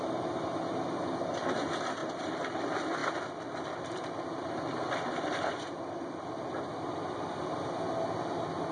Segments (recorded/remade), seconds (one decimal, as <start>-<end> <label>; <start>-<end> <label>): 0.0-2.0 recorded; 2.0-2.6 remade; 2.6-3.0 recorded; 3.0-7.7 remade; 7.7-8.7 recorded